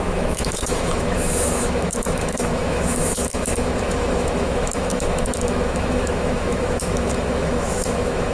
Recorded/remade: remade